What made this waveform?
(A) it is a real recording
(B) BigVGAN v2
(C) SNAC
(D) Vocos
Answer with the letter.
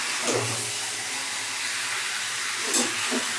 A